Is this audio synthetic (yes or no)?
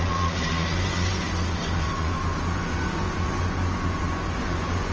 yes